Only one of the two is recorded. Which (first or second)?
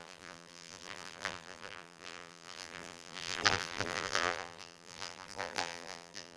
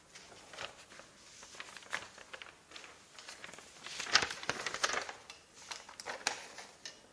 second